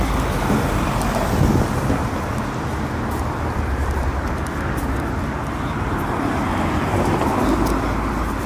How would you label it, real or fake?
real